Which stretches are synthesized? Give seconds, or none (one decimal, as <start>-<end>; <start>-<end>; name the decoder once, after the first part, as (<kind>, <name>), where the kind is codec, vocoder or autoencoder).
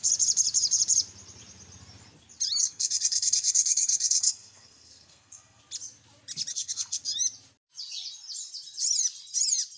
2.6-5.6 (codec, SNAC); 6.5-7.0